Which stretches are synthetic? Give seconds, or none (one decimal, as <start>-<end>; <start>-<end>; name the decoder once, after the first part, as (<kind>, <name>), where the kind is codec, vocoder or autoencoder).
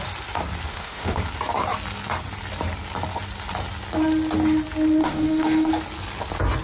0.7-1.2 (autoencoder, DAC-VAE); 5.0-5.7